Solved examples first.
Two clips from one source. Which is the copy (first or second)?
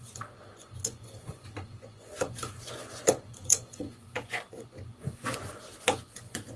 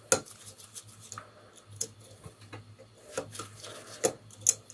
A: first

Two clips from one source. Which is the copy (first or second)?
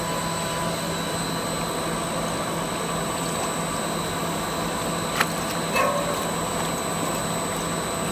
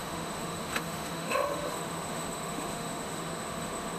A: second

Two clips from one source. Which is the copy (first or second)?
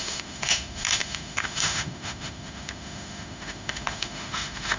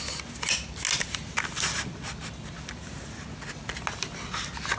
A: first